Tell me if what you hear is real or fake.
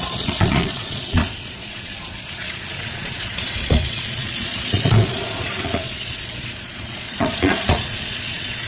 fake